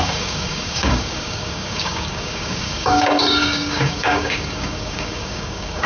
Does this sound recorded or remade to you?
remade